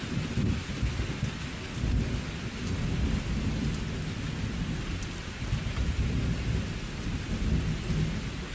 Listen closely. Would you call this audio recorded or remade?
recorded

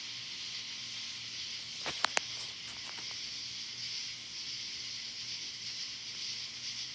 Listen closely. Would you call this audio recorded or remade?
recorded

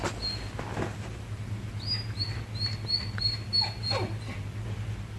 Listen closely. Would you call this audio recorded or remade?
recorded